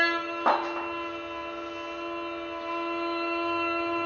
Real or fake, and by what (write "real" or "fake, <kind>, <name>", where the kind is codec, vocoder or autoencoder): real